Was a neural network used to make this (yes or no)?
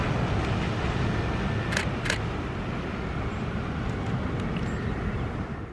no